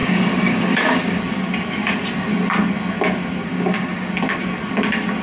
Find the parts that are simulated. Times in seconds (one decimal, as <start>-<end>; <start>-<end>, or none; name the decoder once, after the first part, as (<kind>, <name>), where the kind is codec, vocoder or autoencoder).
0.0-1.2 (codec, DAC); 3.4-4.1